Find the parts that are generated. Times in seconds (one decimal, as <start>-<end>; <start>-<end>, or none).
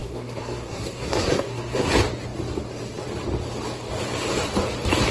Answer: 0.0-1.9